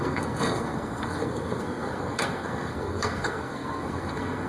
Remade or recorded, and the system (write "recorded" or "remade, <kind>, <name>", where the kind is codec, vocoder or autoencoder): remade, codec, SNAC